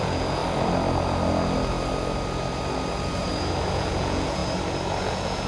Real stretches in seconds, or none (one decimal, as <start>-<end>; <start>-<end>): 0.4-3.7; 4.4-5.0